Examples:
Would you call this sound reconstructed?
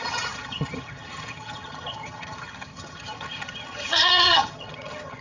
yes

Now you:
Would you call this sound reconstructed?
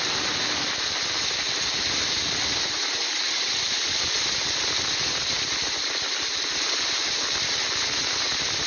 no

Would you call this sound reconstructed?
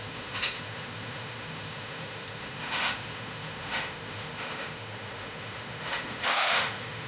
yes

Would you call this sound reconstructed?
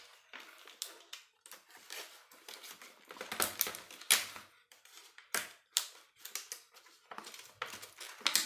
no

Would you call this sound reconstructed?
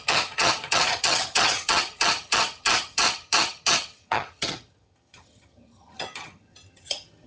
yes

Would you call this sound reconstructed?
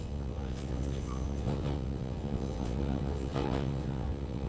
yes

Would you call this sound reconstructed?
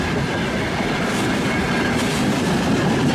no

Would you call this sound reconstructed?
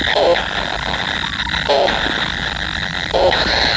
no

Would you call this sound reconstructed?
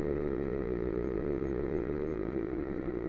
yes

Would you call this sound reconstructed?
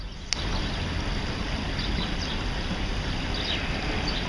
no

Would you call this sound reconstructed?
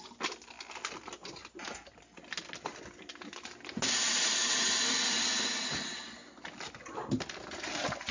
no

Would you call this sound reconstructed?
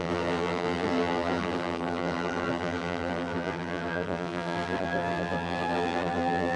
yes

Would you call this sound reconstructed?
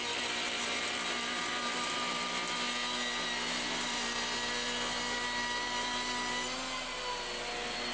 no